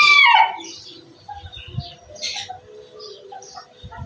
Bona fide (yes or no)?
yes